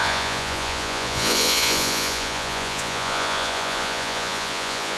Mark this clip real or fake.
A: fake